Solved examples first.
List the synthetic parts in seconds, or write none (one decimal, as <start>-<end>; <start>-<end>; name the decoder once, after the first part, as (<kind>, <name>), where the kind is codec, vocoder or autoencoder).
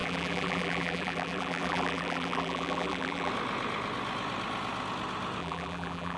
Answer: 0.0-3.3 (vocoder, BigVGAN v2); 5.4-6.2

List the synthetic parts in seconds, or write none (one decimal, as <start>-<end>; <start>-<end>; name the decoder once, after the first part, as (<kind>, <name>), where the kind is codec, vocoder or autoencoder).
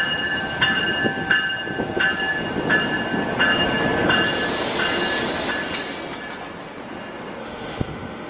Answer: 7.4-8.3 (autoencoder, DAC-VAE)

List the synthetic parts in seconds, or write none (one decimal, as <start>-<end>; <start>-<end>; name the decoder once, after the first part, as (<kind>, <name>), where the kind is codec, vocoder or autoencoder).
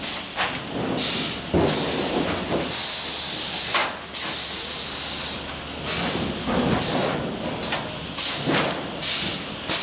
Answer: none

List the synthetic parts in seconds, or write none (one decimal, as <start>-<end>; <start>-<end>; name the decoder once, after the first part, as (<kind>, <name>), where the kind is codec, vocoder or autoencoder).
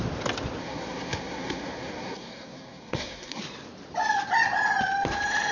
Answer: 0.6-3.4 (codec, SNAC)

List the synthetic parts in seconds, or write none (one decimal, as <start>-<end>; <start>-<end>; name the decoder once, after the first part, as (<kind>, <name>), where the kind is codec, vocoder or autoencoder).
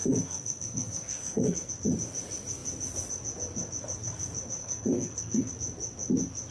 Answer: 0.0-1.7 (codec, SNAC); 4.6-5.5